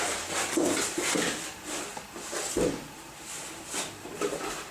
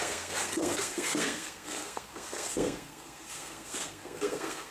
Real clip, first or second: first